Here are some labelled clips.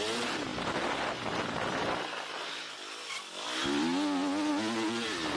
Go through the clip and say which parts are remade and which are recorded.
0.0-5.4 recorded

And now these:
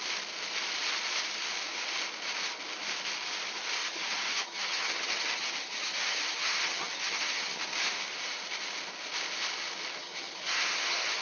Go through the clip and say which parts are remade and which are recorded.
0.0-3.8 recorded; 3.8-7.6 remade; 7.6-10.0 recorded; 10.0-11.2 remade

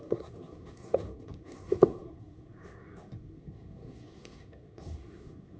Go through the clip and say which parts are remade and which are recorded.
0.0-5.6 remade

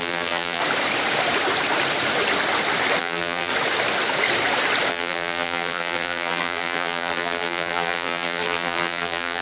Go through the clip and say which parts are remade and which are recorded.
0.0-0.6 remade; 0.6-3.0 recorded; 3.0-3.5 remade; 3.5-4.9 recorded; 4.9-9.4 remade